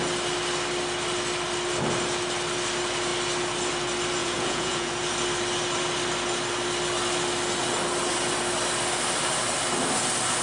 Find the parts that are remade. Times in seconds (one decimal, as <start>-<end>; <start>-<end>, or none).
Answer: 4.2-4.9